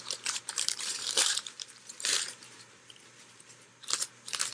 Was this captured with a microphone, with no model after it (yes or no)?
no